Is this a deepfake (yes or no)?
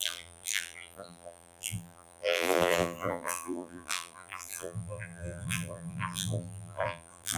yes